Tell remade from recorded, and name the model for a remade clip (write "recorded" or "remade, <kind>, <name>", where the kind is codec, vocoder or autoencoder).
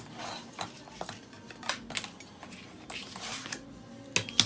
recorded